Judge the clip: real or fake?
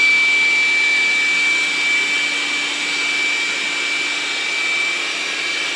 real